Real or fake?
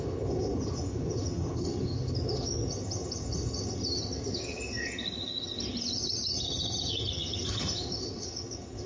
fake